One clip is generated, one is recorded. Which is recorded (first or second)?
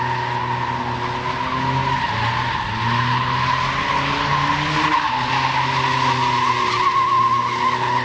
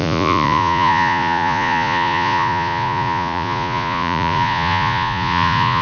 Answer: first